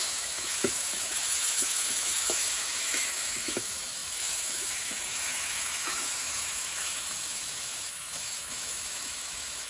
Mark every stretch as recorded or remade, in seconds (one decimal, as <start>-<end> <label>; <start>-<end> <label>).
0.0-9.7 remade

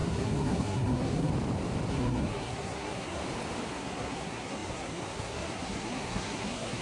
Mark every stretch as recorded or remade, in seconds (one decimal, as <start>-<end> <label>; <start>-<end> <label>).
0.0-1.3 remade; 1.3-1.9 recorded; 1.9-3.2 remade; 3.2-3.7 recorded; 3.7-6.8 remade

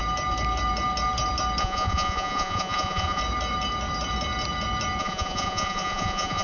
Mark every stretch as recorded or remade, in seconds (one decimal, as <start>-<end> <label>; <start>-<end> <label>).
0.0-1.6 recorded; 1.6-3.2 remade; 3.2-5.0 recorded; 5.0-6.4 remade

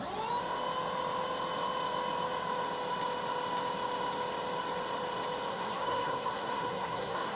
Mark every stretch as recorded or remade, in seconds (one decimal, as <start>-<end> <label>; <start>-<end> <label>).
0.0-5.5 recorded; 5.5-7.4 remade

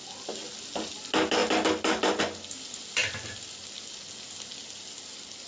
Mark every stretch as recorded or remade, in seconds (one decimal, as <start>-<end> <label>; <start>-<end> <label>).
0.0-5.5 recorded

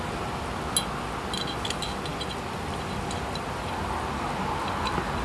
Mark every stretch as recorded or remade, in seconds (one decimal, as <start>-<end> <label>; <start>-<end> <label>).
0.0-5.2 recorded

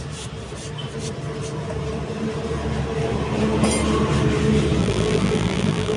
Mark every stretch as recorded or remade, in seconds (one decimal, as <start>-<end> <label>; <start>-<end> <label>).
0.0-4.8 recorded; 4.8-6.0 remade

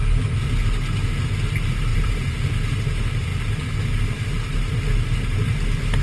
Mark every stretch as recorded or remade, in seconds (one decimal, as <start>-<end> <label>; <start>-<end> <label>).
0.0-1.9 recorded; 1.9-2.4 remade; 2.4-3.3 recorded; 3.3-3.8 remade; 3.8-6.0 recorded